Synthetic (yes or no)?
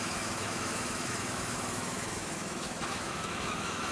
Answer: yes